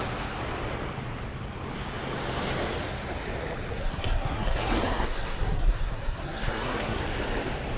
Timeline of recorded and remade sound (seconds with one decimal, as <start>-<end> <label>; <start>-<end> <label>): 0.0-3.7 recorded; 3.7-7.0 remade; 7.0-7.8 recorded